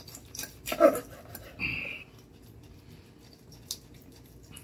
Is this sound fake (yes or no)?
no